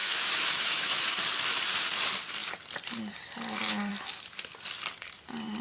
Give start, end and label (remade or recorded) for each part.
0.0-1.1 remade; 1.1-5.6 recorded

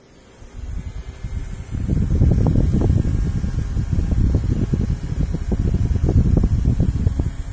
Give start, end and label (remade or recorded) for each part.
0.0-7.5 recorded

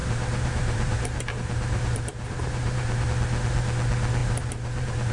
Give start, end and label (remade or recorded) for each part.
0.0-3.1 remade; 3.1-4.2 recorded; 4.2-5.1 remade

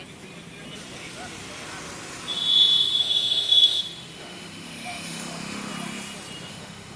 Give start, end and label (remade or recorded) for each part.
0.0-3.0 recorded; 3.0-5.7 remade; 5.7-6.5 recorded; 6.5-7.0 remade

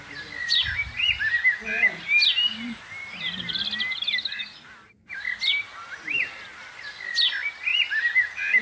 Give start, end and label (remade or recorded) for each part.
0.0-0.4 recorded; 0.4-1.0 remade; 1.0-8.6 recorded

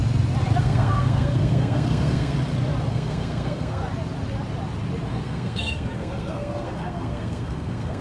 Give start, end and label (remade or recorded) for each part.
0.0-0.6 recorded; 0.6-2.3 remade; 2.3-2.9 recorded; 2.9-3.8 remade; 3.8-5.1 recorded; 5.1-8.0 remade

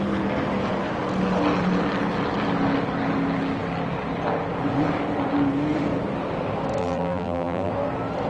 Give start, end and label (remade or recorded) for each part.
0.0-6.8 recorded; 6.8-7.7 remade; 7.7-8.3 recorded